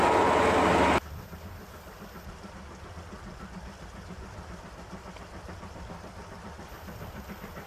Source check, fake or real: real